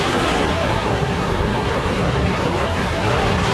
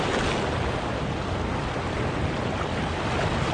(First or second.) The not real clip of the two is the first